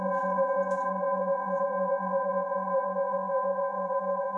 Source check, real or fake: fake